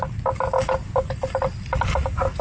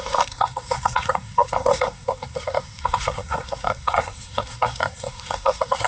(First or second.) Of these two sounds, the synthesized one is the second